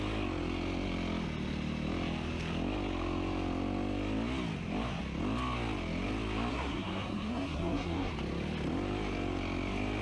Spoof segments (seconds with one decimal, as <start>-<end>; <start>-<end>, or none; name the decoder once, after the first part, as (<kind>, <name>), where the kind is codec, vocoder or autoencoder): 6.5-8.1 (codec, SNAC)